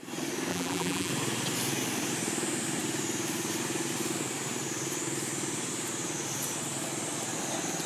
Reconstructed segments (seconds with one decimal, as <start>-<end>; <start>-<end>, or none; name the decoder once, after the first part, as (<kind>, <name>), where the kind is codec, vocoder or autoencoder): 0.5-1.1 (vocoder, BigVGAN v2)